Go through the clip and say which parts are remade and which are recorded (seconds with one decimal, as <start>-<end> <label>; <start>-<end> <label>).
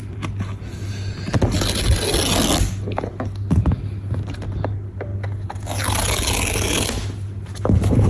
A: 0.0-8.1 recorded